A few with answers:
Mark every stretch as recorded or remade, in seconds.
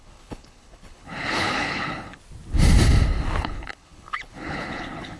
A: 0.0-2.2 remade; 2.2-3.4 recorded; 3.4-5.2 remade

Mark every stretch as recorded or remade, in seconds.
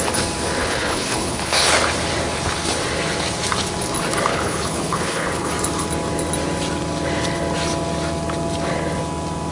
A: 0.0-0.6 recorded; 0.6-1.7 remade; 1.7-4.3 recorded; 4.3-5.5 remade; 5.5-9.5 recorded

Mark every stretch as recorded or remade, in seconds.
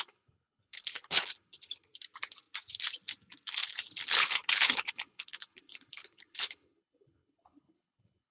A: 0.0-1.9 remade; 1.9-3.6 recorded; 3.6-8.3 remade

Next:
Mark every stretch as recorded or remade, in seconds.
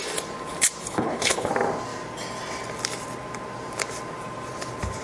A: 0.0-0.8 recorded; 0.8-1.5 remade; 1.5-5.0 recorded